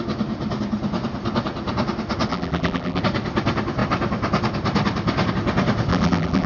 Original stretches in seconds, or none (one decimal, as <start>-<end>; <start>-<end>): 0.0-2.3; 3.0-5.9